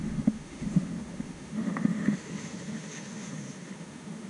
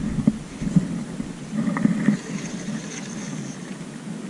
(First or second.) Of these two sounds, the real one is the second